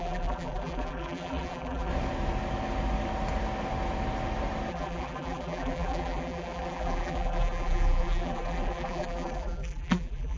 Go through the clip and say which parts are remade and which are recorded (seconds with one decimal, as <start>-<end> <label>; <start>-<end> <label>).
0.0-1.9 remade; 1.9-4.7 recorded; 4.7-10.4 remade